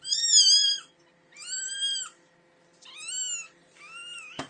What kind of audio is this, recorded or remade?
recorded